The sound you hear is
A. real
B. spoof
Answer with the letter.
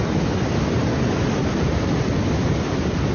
A